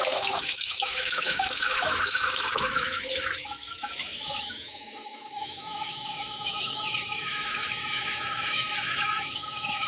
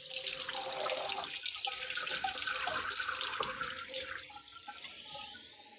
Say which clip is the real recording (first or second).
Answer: second